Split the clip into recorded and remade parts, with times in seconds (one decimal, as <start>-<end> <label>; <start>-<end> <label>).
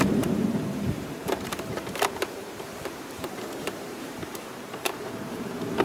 0.0-5.8 remade